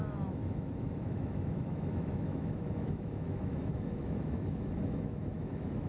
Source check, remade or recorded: remade